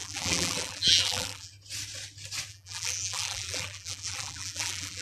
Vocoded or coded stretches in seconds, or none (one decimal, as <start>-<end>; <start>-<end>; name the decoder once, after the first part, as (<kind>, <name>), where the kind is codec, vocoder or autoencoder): 0.0-1.5 (vocoder, BigVGAN v2); 2.5-5.0